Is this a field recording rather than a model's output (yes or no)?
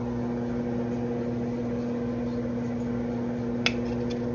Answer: yes